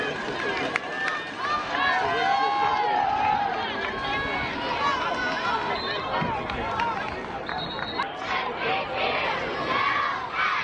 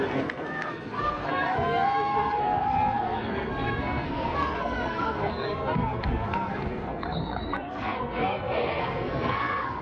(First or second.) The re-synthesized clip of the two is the second